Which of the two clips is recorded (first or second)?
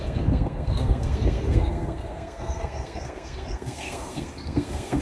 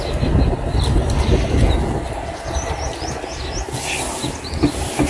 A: second